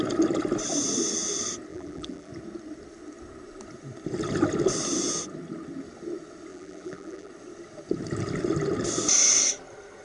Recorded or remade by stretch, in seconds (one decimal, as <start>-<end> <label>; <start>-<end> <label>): 0.0-1.7 recorded; 1.7-2.3 remade; 2.3-6.5 recorded; 6.5-7.3 remade; 7.3-10.0 recorded

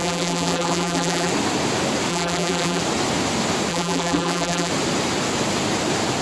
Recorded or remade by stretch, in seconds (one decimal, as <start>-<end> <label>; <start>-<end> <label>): 0.0-1.3 remade; 1.3-2.1 recorded; 2.1-2.8 remade; 2.8-3.7 recorded; 3.7-4.7 remade; 4.7-6.2 recorded

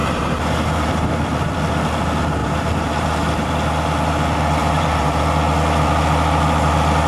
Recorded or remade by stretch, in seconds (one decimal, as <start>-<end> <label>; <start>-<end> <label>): 0.0-1.2 remade; 1.2-2.4 recorded; 2.4-3.5 remade; 3.5-4.6 recorded; 4.6-5.2 remade; 5.2-7.1 recorded

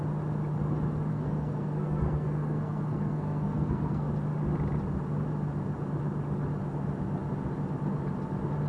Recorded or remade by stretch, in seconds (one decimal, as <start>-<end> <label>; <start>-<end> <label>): 0.0-1.1 recorded; 1.1-4.1 remade; 4.1-8.7 recorded

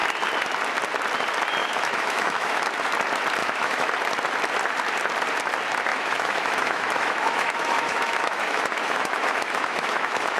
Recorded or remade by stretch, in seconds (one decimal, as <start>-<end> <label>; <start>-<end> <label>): 0.0-1.6 recorded; 1.6-2.7 remade; 2.7-3.4 recorded; 3.4-3.9 remade; 3.9-5.9 recorded; 5.9-10.4 remade

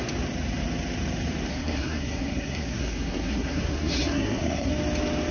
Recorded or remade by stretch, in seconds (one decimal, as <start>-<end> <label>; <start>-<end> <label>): 0.0-1.5 recorded; 1.5-4.7 remade; 4.7-5.3 recorded

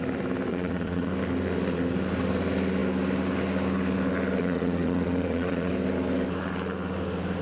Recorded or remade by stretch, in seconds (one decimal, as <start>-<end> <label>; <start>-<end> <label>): 0.0-0.5 recorded; 0.5-1.1 remade; 1.1-4.4 recorded; 4.4-5.7 remade; 5.7-7.4 recorded

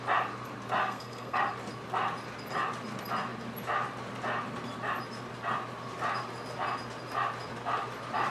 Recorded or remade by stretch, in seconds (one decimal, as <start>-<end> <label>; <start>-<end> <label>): 0.0-0.8 recorded; 0.8-1.4 remade; 1.4-8.3 recorded